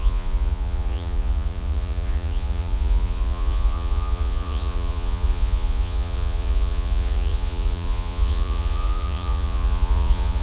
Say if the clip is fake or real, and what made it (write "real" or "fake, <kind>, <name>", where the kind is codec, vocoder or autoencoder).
fake, vocoder, Vocos